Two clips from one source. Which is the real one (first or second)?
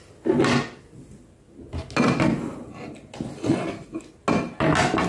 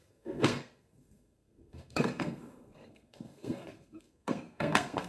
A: first